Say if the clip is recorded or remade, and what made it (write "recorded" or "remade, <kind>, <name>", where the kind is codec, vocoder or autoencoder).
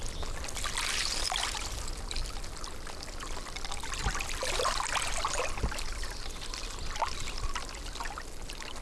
recorded